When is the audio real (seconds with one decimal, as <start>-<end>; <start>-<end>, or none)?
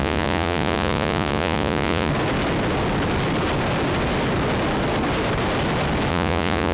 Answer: 2.1-6.1